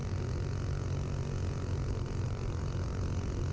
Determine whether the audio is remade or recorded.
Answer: recorded